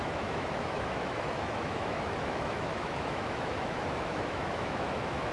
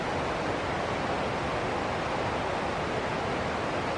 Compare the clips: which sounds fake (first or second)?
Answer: first